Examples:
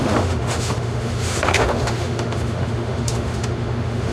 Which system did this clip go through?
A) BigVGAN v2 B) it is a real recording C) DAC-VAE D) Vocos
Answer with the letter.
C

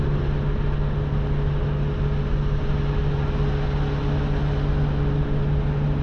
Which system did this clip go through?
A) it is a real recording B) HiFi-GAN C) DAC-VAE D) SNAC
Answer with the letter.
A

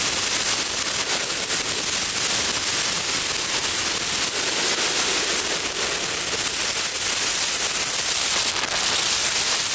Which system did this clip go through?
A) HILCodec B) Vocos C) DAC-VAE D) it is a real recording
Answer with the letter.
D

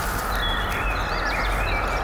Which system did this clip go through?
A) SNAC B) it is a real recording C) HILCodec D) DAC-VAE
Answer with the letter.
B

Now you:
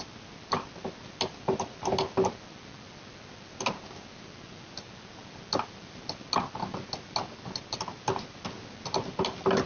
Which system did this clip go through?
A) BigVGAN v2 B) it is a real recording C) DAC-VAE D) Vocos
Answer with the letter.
B